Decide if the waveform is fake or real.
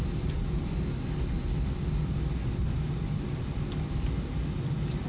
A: real